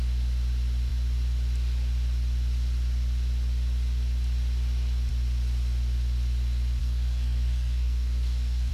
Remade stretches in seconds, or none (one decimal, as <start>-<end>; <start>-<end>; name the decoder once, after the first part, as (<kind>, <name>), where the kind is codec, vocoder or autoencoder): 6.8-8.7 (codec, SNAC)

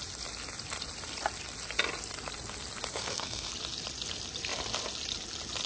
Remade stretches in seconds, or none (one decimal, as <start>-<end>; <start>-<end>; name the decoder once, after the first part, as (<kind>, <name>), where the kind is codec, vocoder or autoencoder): 2.9-3.5 (codec, SNAC)

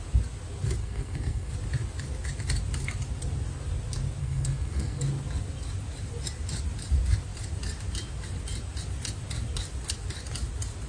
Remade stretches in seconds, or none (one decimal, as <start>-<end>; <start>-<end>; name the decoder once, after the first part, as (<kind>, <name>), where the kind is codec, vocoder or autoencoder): 0.8-1.5 (codec, SNAC); 4.2-5.0

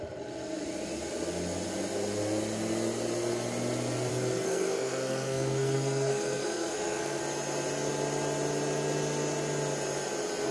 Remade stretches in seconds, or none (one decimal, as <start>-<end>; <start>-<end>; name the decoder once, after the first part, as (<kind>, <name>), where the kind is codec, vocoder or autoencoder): 4.1-7.2 (codec, SNAC)

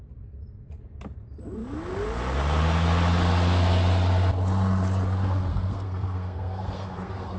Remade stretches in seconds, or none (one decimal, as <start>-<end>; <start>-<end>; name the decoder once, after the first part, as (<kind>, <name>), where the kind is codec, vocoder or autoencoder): 5.5-7.4 (codec, SNAC)

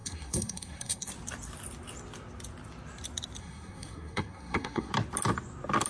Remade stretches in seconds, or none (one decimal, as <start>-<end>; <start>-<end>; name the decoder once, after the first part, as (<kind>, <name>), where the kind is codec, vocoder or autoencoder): 0.0-1.1 (codec, SNAC); 3.4-4.9

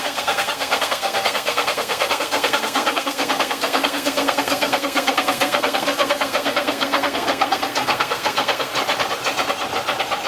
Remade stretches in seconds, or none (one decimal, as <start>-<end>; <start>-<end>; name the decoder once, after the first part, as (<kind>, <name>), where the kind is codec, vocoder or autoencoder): 0.0-8.7 (codec, SNAC)

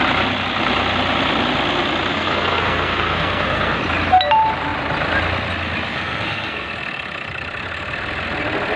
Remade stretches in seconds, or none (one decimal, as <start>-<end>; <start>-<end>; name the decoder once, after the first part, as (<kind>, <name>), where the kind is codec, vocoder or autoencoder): 2.1-3.8 (codec, SNAC); 5.9-6.7